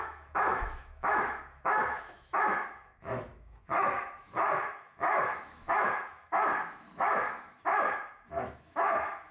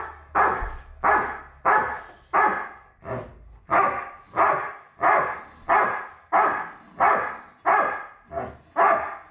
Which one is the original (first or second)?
second